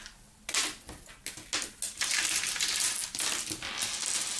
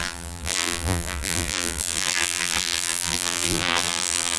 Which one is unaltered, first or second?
first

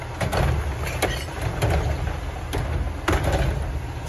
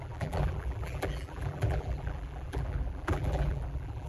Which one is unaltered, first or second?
first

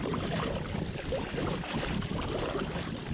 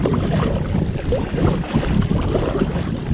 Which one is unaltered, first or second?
second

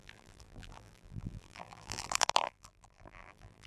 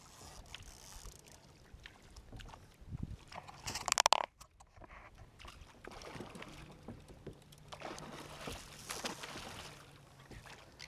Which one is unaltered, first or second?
second